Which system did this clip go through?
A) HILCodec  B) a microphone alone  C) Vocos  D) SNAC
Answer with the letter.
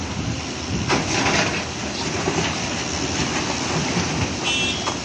B